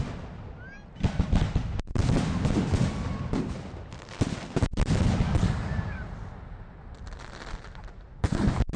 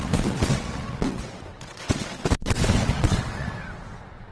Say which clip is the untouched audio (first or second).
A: first